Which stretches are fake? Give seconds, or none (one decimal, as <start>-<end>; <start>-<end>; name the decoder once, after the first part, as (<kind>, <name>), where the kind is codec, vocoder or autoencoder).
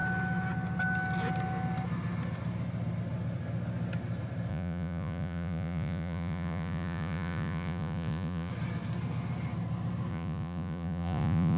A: 4.5-8.5 (vocoder, Vocos); 10.1-11.6